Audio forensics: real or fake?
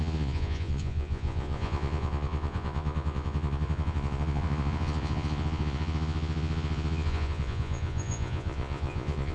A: fake